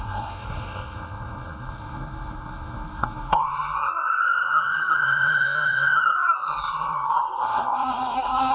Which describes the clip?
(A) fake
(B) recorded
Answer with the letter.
A